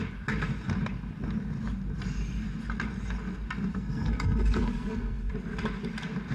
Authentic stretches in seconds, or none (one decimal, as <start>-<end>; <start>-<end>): 0.0-3.7; 5.3-6.3